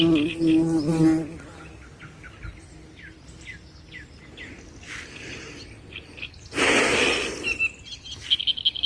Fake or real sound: real